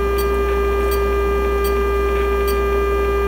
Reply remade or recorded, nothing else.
recorded